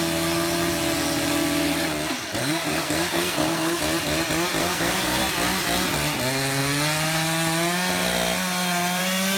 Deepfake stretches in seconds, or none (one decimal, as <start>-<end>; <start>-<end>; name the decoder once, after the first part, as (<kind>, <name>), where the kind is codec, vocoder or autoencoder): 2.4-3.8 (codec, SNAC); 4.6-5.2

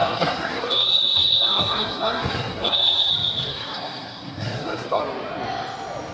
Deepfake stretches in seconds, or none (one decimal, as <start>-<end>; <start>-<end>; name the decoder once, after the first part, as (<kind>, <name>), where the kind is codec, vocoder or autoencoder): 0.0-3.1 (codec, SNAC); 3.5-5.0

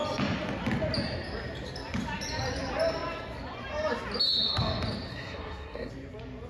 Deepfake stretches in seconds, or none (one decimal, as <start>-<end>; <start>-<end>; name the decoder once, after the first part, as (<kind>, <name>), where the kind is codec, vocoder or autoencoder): 5.1-5.9 (codec, SNAC)

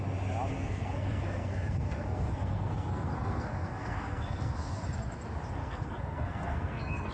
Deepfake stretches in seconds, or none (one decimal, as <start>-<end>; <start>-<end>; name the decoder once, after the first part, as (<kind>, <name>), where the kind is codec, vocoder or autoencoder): 0.5-4.8 (codec, SNAC); 5.6-7.1

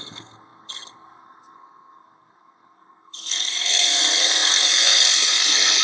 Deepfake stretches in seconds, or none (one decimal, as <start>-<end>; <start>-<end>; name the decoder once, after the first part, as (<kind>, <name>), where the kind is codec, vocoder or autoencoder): 0.0-5.8 (codec, SNAC)

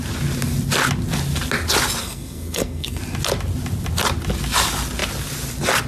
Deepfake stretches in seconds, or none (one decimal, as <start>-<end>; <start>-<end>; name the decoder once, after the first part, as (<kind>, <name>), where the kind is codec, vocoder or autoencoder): 2.0-3.0 (codec, SNAC)